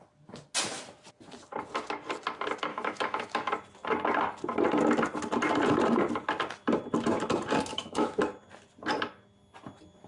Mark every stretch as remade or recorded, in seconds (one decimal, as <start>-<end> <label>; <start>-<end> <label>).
0.0-2.7 recorded; 2.7-3.5 remade; 3.5-7.7 recorded; 7.7-8.2 remade; 8.2-10.1 recorded